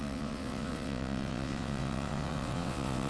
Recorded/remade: remade